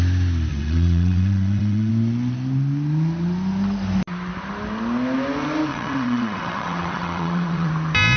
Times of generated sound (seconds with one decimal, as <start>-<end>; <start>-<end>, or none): 0.5-1.9; 5.7-7.7